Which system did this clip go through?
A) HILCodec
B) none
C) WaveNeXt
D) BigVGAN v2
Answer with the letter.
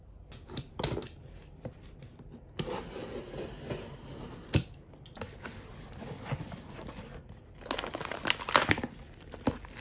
B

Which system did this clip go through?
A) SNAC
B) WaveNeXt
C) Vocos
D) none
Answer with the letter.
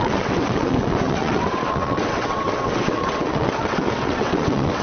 B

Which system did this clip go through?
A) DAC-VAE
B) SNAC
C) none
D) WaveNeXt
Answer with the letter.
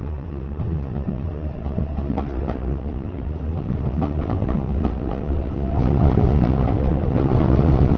D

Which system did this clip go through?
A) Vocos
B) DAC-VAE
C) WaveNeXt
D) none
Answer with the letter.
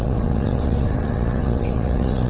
C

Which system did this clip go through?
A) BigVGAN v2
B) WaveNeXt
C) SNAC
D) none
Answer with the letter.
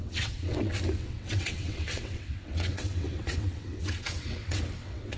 B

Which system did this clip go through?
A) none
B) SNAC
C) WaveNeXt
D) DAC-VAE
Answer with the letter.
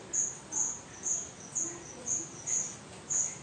A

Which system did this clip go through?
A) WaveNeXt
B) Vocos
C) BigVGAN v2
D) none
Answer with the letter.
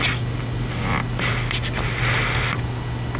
D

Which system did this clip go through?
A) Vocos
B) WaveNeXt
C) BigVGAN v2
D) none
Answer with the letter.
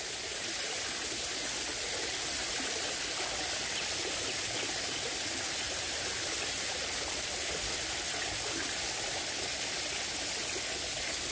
D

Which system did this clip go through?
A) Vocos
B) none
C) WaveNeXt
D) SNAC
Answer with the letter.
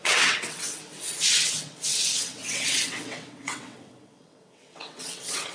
C